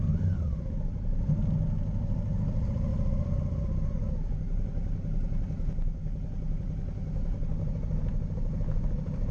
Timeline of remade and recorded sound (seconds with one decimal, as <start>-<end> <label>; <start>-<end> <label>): 0.0-2.9 recorded; 2.9-4.0 remade; 4.0-9.3 recorded